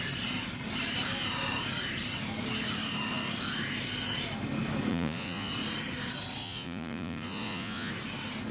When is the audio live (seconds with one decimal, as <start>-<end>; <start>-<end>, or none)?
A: 0.0-4.9; 5.5-6.4; 7.9-8.5